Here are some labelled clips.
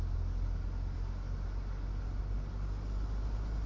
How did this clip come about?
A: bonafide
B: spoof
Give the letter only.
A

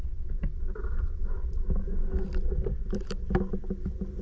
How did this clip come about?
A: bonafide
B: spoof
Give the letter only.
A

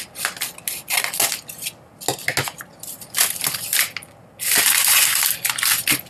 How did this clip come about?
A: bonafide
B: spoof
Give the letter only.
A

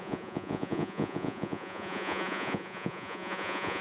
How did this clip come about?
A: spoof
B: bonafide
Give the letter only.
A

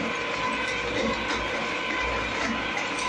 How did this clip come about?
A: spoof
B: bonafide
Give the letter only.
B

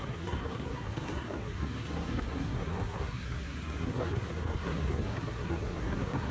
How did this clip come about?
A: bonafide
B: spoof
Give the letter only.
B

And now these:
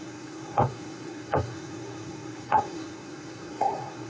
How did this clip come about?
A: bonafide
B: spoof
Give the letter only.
B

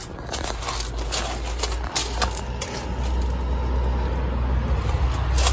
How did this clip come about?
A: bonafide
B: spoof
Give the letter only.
A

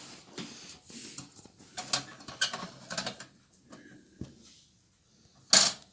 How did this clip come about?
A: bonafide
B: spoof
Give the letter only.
A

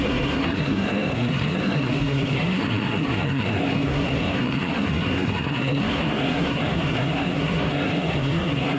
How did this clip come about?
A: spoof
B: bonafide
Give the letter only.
A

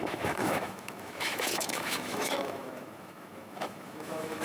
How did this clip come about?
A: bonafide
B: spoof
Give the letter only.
B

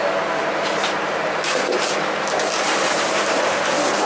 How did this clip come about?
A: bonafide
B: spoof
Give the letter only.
A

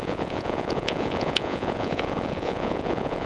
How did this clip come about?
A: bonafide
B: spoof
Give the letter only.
B